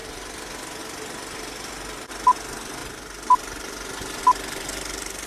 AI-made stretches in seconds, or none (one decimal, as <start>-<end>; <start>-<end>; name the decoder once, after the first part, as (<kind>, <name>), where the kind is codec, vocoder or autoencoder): none